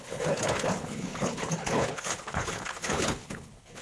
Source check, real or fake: fake